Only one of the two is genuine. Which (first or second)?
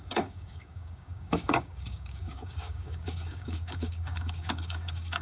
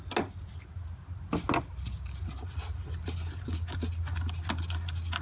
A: second